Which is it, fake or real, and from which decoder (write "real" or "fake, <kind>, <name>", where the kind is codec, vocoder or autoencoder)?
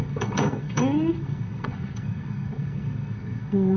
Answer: fake, codec, SNAC